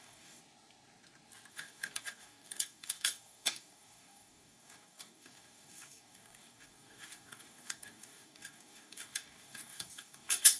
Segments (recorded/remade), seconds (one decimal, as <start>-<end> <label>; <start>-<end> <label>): 0.0-0.4 remade; 0.4-1.5 recorded; 1.5-10.6 remade